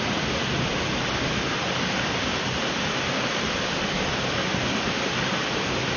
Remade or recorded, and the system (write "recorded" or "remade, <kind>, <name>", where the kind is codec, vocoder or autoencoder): recorded